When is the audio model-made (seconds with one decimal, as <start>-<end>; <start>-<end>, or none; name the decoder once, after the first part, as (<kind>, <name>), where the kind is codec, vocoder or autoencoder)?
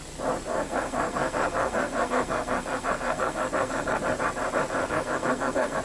0.5-4.0 (codec, SNAC); 4.8-5.8